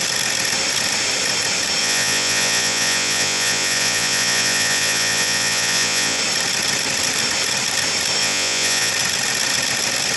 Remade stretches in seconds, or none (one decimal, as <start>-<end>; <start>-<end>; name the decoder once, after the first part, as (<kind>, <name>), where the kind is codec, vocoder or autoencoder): 1.8-6.2 (vocoder, Vocos); 8.2-8.9